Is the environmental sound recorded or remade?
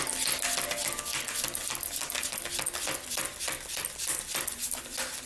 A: recorded